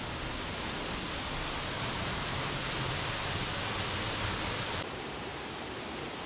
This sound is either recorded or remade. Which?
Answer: recorded